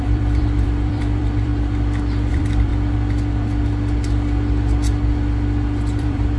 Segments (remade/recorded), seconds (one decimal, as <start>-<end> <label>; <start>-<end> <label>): 0.0-1.5 remade; 1.5-2.3 recorded; 2.3-2.7 remade; 2.7-6.0 recorded; 6.0-6.4 remade

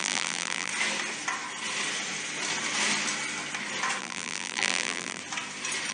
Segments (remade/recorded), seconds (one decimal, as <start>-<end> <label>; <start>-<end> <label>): 0.0-0.7 remade; 0.7-4.0 recorded; 4.0-5.2 remade; 5.2-5.9 recorded

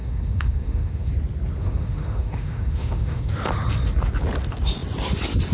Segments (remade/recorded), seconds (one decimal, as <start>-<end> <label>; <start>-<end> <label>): 0.0-1.1 remade; 1.1-1.6 recorded; 1.6-3.3 remade; 3.3-5.5 recorded

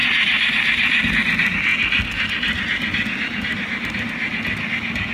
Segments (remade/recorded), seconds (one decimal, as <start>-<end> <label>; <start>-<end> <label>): 0.0-1.1 remade; 1.1-5.1 recorded